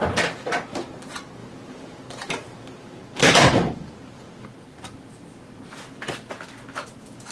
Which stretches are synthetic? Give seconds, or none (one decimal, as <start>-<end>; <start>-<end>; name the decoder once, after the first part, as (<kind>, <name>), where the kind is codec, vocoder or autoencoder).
1.4-5.6 (vocoder, BigVGAN v2)